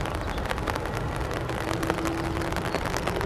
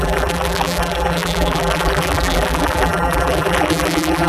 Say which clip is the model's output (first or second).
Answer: second